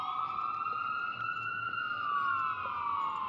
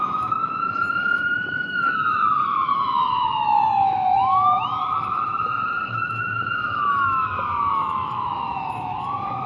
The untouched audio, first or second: first